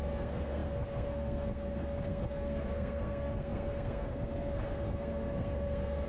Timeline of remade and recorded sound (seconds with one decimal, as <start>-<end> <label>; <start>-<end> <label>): 0.0-6.1 remade